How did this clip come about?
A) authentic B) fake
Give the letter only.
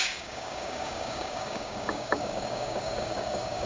B